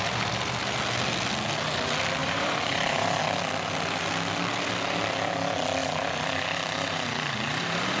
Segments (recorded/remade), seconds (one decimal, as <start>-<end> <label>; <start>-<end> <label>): 0.0-2.2 recorded; 2.2-3.2 remade; 3.2-5.8 recorded; 5.8-8.0 remade